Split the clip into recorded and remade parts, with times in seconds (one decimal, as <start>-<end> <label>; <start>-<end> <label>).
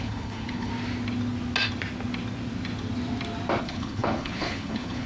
0.0-0.7 remade; 0.7-3.6 recorded; 3.6-5.1 remade